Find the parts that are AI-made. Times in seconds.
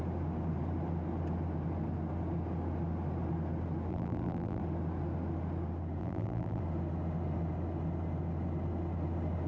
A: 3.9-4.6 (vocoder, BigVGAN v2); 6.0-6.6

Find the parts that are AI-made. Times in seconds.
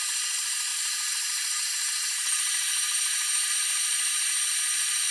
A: 0.7-3.5 (vocoder, BigVGAN v2)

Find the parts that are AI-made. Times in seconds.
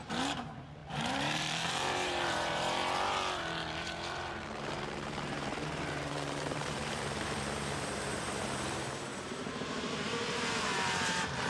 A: 0.0-2.8 (vocoder, BigVGAN v2); 4.6-11.5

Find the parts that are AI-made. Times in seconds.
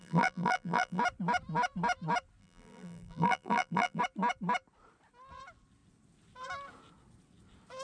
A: 0.0-1.0 (vocoder, BigVGAN v2); 2.4-4.0